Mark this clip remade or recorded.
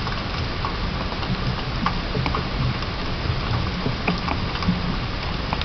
recorded